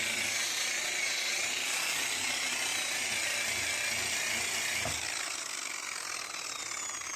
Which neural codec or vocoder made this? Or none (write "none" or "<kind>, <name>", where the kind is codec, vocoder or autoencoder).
none